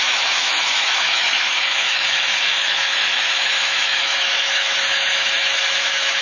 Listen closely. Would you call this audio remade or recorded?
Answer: remade